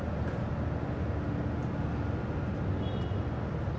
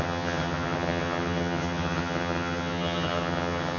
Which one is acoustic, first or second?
first